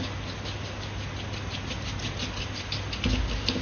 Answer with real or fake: real